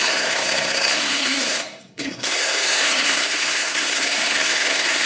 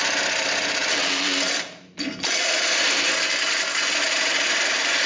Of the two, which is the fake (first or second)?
first